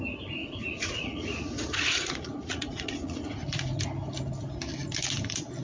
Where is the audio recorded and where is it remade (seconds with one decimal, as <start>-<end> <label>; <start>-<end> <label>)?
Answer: 0.0-0.4 recorded; 0.4-3.8 remade; 3.8-5.6 recorded